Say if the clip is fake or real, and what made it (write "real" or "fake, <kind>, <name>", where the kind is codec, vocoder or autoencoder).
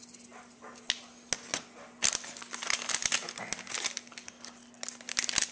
real